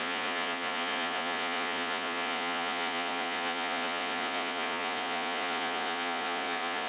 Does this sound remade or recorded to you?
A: remade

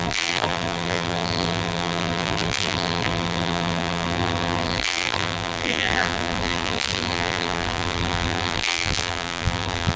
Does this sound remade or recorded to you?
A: remade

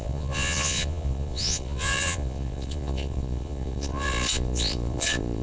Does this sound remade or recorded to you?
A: remade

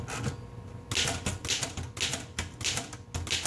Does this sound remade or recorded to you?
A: recorded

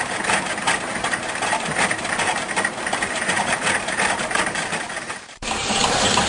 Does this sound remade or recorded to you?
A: remade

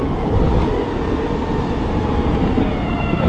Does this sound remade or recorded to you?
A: recorded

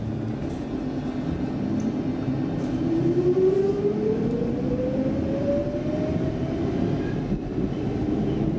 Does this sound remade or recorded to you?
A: recorded